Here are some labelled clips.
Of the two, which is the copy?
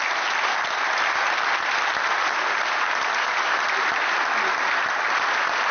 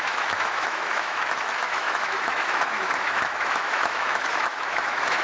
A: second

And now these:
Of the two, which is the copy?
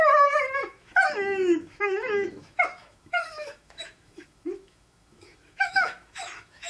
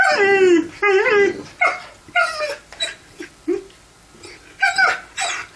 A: first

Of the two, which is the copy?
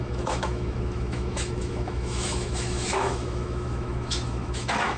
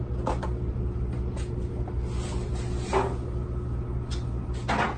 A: first